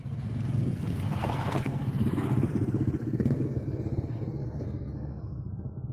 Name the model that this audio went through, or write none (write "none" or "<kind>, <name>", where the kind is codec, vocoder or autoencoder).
codec, SNAC